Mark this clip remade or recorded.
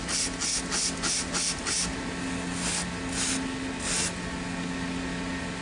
recorded